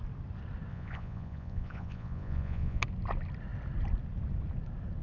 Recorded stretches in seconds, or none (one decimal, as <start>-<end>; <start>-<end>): 0.0-0.7; 2.8-5.0